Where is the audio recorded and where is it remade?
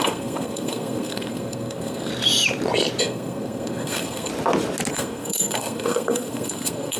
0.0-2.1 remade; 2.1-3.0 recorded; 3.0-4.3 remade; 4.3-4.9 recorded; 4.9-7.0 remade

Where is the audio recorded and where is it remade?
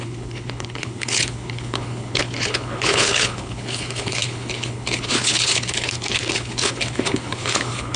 0.0-8.0 remade